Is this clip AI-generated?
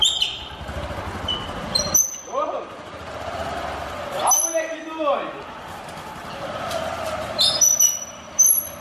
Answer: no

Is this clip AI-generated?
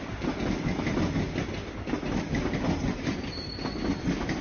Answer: no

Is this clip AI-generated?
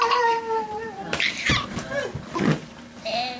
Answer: yes